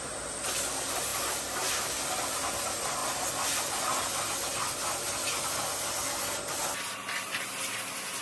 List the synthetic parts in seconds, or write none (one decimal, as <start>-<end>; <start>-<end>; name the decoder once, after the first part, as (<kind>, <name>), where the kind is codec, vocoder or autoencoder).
1.1-2.5 (vocoder, BigVGAN v2)